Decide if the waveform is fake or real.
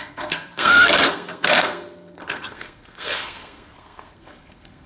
fake